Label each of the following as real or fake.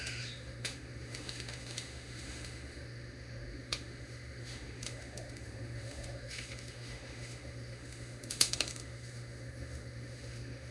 fake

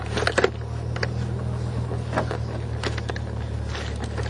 real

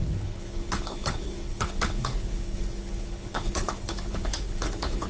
fake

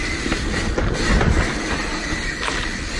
real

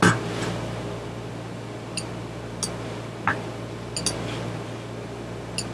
real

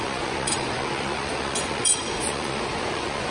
fake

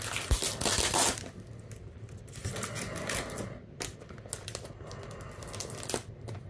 real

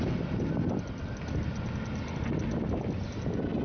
real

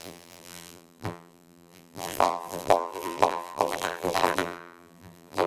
fake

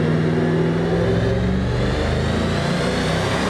real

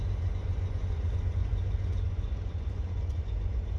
fake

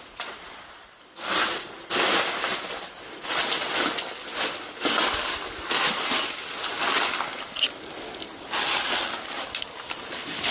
real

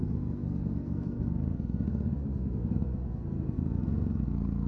fake